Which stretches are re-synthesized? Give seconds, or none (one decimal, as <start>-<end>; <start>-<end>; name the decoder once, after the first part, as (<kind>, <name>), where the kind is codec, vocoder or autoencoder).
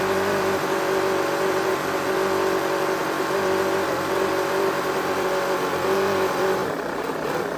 0.0-1.7 (vocoder, BigVGAN v2); 3.0-7.6